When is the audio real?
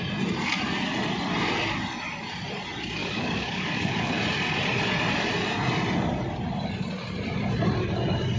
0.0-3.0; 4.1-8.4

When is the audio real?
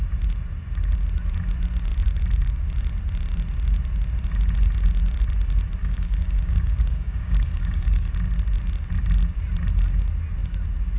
0.0-5.8; 8.1-11.0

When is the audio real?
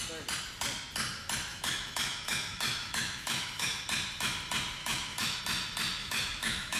0.0-1.5; 3.8-4.8; 5.4-6.0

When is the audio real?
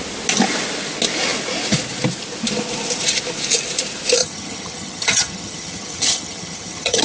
0.0-4.2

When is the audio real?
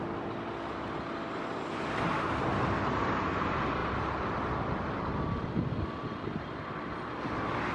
0.0-3.8; 7.2-7.7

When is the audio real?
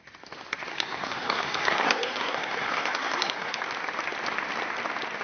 0.0-0.7; 3.6-5.2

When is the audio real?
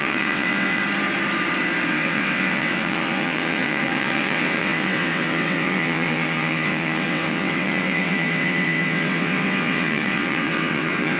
0.8-1.9